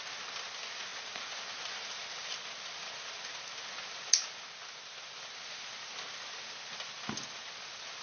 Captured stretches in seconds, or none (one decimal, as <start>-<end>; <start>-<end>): 0.0-8.0